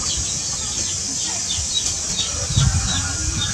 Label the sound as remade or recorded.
remade